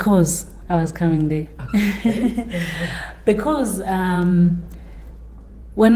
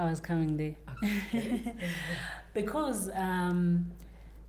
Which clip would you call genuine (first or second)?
second